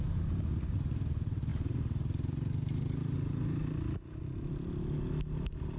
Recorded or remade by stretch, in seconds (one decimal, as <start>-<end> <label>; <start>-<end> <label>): 0.0-5.8 recorded